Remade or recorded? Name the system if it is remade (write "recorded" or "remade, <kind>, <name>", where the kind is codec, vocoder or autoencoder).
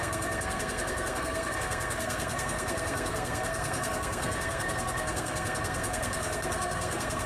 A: remade, codec, SNAC